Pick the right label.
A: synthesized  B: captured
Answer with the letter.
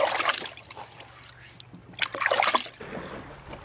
B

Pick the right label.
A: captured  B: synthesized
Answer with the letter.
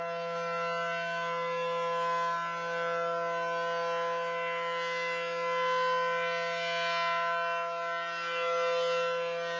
A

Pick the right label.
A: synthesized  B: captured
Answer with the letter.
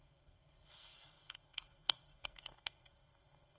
A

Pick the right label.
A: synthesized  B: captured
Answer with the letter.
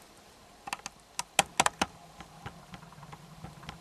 B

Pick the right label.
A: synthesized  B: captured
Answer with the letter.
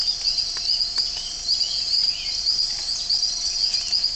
B